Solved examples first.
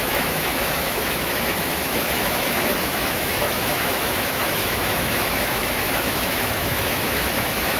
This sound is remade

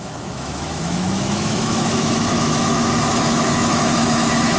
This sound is remade